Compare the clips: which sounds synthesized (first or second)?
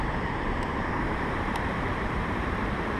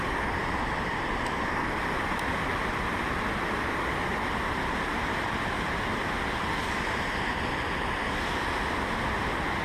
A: first